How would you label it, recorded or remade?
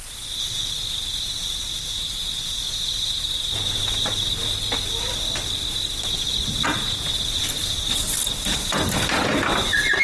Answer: recorded